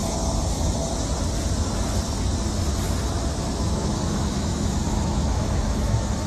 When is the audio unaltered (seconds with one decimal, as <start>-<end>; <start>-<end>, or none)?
0.0-3.5